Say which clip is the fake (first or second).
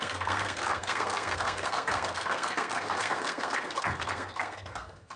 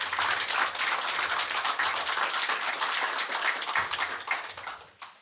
first